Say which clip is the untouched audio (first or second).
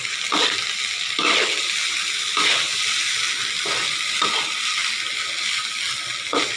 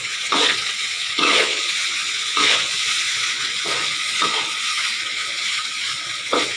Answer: first